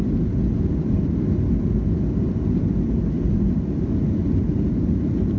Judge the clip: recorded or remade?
recorded